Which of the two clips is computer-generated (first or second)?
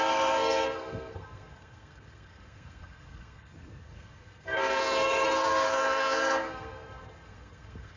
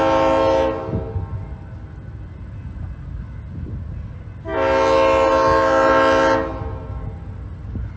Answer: first